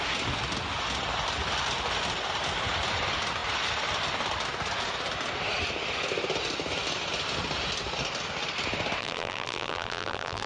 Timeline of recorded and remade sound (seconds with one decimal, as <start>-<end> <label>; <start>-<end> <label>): 0.0-9.0 recorded; 9.0-10.5 remade

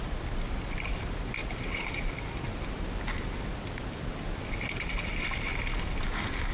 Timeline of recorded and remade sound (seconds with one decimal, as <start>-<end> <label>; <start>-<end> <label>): 0.0-1.4 recorded; 1.4-2.3 remade; 2.3-6.5 recorded

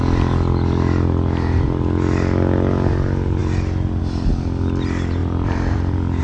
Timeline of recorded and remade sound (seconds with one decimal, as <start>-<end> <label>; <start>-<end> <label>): 0.0-5.2 recorded; 5.2-6.2 remade

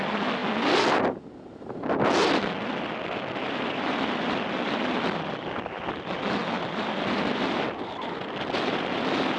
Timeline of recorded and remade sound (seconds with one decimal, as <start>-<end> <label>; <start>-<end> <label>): 0.0-0.4 remade; 0.4-3.4 recorded; 3.4-9.4 remade

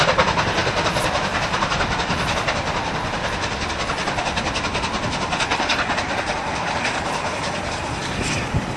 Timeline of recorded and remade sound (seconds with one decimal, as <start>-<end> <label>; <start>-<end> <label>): 0.0-5.5 recorded; 5.5-8.0 remade; 8.0-8.8 recorded

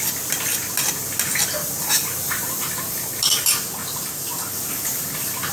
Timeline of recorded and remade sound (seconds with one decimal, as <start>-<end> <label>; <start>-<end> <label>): 0.0-1.8 recorded; 1.8-2.9 remade; 2.9-5.5 recorded